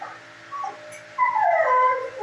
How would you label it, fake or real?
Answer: real